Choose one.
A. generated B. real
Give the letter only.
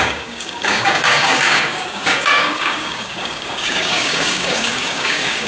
A